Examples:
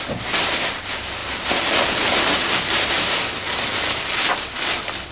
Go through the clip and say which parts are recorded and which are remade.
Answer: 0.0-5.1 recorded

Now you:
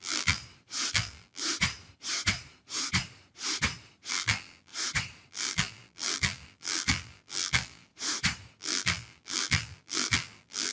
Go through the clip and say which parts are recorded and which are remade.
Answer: 0.0-0.4 remade; 0.4-0.9 recorded; 0.9-1.4 remade; 1.4-4.1 recorded; 4.1-4.7 remade; 4.7-5.3 recorded; 5.3-7.9 remade; 7.9-8.6 recorded; 8.6-10.7 remade

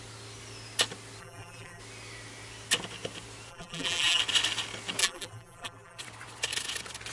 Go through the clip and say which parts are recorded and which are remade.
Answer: 0.0-1.2 recorded; 1.2-1.8 remade; 1.8-3.5 recorded; 3.5-4.2 remade; 4.2-5.0 recorded; 5.0-6.0 remade; 6.0-7.1 recorded